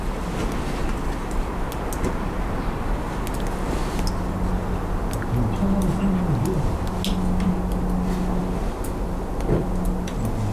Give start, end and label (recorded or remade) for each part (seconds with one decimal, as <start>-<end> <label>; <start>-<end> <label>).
0.0-10.5 recorded